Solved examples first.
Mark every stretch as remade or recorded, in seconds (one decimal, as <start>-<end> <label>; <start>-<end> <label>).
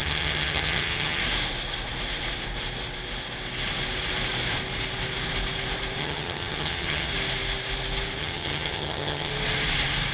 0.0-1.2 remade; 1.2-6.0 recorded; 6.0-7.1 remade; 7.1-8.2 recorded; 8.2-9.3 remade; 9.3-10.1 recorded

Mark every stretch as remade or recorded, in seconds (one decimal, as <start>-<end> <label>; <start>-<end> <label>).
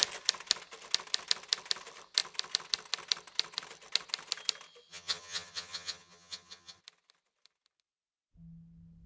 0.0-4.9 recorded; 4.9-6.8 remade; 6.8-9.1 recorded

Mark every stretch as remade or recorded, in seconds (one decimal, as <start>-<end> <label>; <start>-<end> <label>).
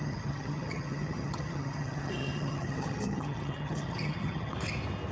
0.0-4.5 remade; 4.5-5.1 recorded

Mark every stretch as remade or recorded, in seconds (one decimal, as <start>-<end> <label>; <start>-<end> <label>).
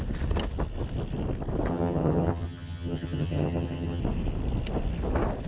0.0-1.7 recorded; 1.7-4.0 remade; 4.0-5.5 recorded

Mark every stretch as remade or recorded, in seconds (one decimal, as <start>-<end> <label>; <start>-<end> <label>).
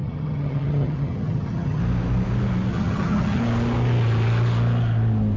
0.0-1.8 remade; 1.8-2.7 recorded; 2.7-3.4 remade; 3.4-5.4 recorded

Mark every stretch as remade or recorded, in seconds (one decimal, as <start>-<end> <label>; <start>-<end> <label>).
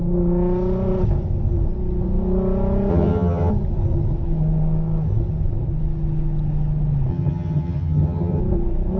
0.0-2.9 recorded; 2.9-3.5 remade; 3.5-7.1 recorded; 7.1-8.4 remade; 8.4-9.0 recorded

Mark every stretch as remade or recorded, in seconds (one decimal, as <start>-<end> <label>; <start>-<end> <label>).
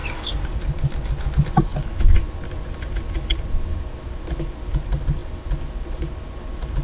0.0-6.8 recorded